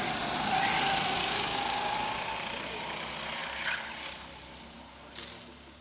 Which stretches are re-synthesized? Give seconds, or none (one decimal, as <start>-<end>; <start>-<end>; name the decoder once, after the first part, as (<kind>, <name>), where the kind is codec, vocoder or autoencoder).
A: 1.2-1.9 (codec, DAC)